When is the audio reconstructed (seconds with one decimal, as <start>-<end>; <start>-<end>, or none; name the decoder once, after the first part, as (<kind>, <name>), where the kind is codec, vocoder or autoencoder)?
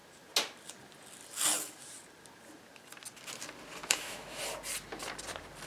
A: 3.8-4.4 (autoencoder, DAC-VAE)